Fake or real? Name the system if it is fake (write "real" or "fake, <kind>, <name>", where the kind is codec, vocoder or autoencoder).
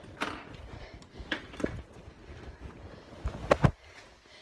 real